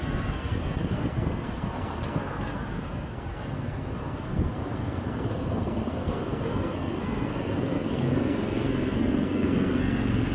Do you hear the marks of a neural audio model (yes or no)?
yes